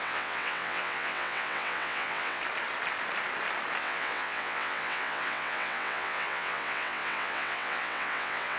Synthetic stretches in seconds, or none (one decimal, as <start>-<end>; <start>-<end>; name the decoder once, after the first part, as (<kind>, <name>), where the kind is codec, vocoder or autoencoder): 0.0-2.4 (vocoder, WaveNeXt); 3.8-8.6